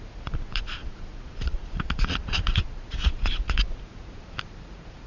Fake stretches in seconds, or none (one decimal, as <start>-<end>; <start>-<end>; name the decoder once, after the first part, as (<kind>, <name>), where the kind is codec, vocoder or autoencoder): 0.0-5.1 (vocoder, Vocos)